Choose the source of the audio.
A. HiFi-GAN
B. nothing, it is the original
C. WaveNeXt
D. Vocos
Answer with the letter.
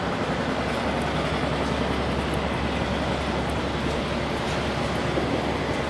B